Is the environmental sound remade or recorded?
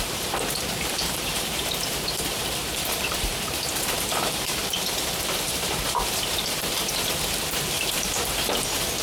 remade